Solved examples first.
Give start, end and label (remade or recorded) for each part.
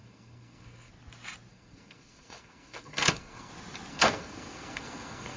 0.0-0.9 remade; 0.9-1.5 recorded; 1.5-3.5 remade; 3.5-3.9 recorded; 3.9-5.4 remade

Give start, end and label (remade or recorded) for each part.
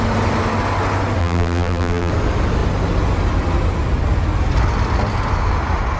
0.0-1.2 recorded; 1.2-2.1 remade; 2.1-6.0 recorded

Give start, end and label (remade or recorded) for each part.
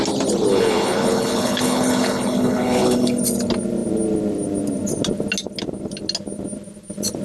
0.0-0.5 recorded; 0.5-3.2 remade; 3.2-7.2 recorded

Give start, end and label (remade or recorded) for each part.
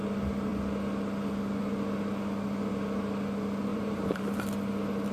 0.0-3.7 recorded; 3.7-4.2 remade; 4.2-5.1 recorded